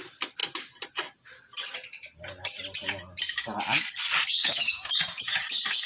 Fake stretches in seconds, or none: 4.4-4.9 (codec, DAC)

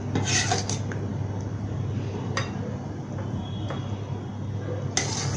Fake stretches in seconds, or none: none

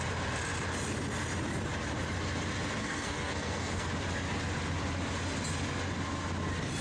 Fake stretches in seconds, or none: 2.8-3.9 (codec, SNAC)

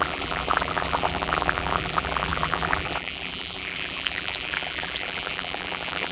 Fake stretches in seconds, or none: 0.0-6.1 (vocoder, BigVGAN v2)